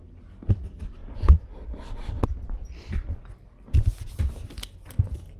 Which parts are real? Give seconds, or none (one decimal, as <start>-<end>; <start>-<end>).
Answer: 0.0-5.4